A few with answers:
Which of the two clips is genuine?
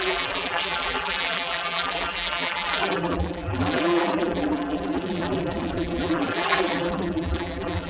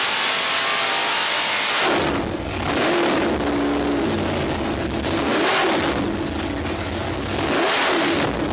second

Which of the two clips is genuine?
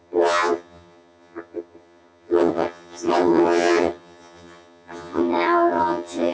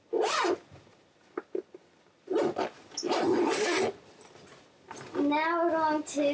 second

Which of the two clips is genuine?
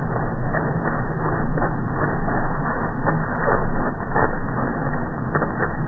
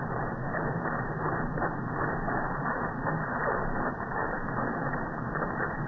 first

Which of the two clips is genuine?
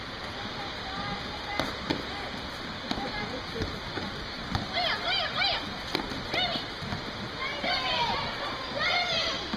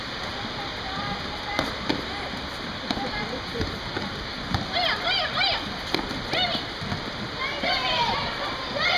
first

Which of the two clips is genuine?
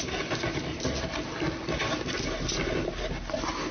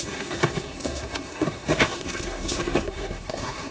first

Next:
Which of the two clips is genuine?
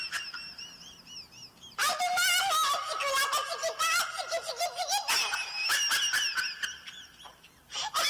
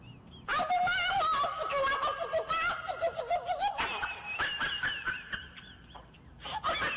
first